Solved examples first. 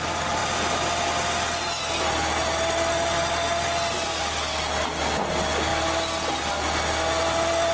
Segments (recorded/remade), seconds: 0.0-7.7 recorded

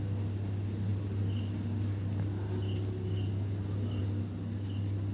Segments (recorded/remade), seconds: 0.0-5.1 recorded

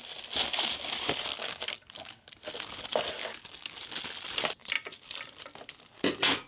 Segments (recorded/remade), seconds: 0.0-1.3 recorded; 1.3-2.3 remade; 2.3-3.2 recorded; 3.2-3.8 remade; 3.8-6.5 recorded

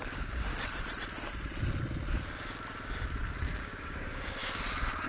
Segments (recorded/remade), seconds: 0.0-0.5 remade; 0.5-3.6 recorded; 3.6-4.4 remade; 4.4-5.1 recorded